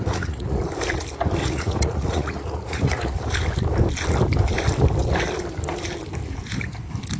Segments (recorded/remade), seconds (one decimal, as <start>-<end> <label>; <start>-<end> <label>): 0.0-0.6 remade; 0.6-1.4 recorded; 1.4-3.2 remade; 3.2-7.2 recorded